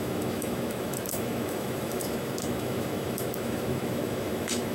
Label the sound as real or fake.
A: fake